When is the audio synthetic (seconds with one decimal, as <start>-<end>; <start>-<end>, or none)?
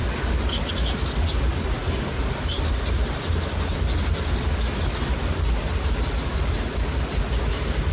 none